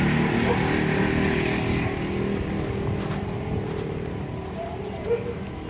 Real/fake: real